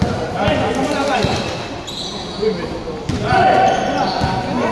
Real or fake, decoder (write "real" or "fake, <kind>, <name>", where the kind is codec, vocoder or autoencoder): real